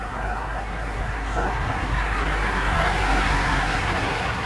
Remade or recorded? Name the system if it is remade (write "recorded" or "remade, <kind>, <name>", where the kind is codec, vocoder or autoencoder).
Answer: remade, codec, SNAC